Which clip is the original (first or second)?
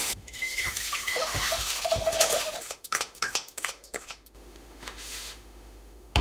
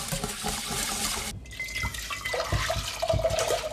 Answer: second